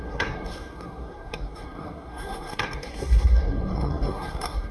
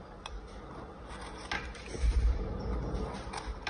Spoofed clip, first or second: first